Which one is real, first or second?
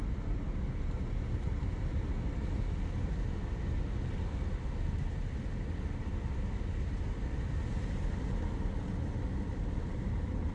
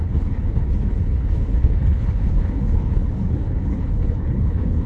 first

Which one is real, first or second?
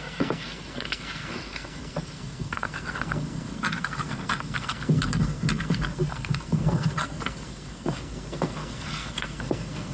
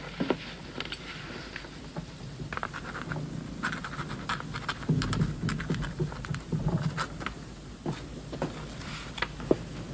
second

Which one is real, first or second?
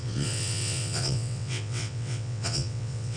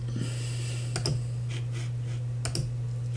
second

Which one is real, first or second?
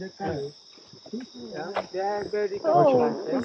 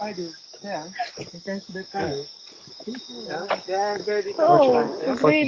first